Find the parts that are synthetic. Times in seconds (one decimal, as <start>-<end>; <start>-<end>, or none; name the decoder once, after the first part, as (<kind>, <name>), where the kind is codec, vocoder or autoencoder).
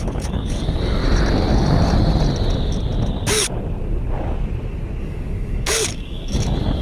0.0-1.0 (codec, DAC); 5.0-6.8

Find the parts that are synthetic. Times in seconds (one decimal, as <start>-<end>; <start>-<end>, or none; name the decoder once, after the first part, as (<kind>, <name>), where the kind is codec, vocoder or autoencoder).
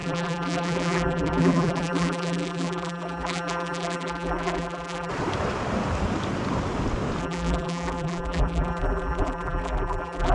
0.0-5.1 (vocoder, BigVGAN v2); 7.2-10.3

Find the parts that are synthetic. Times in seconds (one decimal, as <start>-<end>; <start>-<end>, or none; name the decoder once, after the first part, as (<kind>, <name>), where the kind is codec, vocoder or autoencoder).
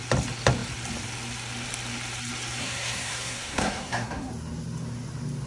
2.6-4.3 (codec, SNAC)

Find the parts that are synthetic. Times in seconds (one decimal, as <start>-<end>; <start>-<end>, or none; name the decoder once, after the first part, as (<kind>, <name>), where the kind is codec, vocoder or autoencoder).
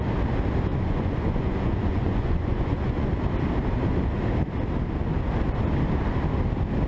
0.7-3.1 (vocoder, Vocos)